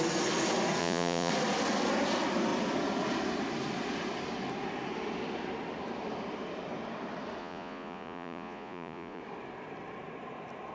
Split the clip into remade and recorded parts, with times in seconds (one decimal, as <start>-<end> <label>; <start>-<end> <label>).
0.0-0.8 recorded; 0.8-1.3 remade; 1.3-7.4 recorded; 7.4-9.2 remade; 9.2-10.7 recorded